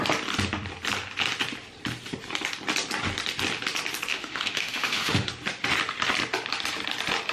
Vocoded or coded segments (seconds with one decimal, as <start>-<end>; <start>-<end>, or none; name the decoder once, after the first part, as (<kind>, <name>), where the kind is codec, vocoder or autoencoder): 4.1-5.3 (autoencoder, DAC-VAE)